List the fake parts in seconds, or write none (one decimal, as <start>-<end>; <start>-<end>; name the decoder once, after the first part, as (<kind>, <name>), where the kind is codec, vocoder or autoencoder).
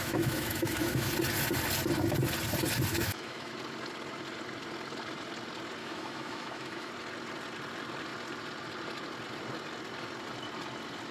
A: 0.0-1.1 (autoencoder, DAC-VAE); 2.9-3.5; 5.8-6.9